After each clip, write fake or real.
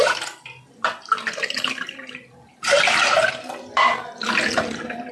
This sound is fake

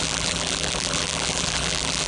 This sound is fake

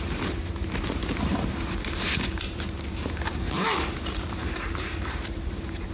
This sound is fake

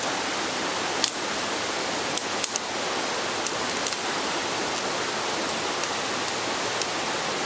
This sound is real